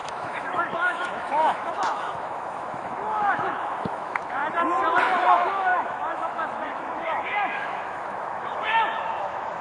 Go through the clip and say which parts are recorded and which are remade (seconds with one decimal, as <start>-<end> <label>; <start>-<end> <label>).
0.0-4.4 remade; 4.4-5.0 recorded; 5.0-9.6 remade